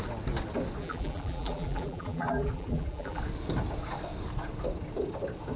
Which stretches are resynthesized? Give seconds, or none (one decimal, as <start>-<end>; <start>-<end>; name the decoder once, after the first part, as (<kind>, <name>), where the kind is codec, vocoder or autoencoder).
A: 0.8-3.2 (vocoder, BigVGAN v2)